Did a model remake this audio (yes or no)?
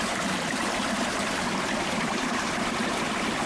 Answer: no